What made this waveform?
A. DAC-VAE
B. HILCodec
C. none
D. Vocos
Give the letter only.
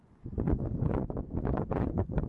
D